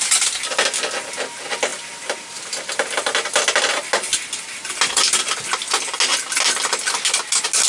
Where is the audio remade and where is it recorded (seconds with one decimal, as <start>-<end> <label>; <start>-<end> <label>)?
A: 0.0-7.7 recorded